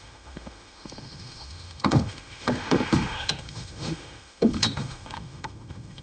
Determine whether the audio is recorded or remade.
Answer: remade